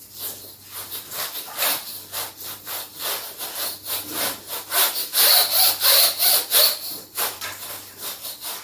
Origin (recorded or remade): recorded